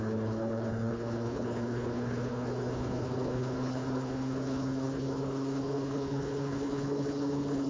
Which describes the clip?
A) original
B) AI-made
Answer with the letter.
B